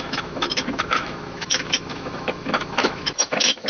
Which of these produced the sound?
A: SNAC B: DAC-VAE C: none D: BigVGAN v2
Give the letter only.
B